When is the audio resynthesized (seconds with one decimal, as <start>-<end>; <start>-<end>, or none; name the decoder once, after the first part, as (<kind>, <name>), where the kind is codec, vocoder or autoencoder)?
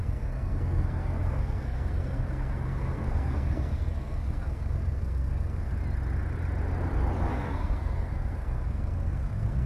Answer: 0.0-5.7 (codec, SNAC); 7.3-9.7